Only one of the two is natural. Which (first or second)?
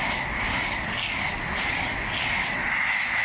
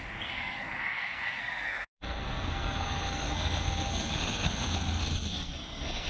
first